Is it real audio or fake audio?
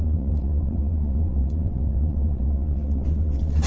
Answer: fake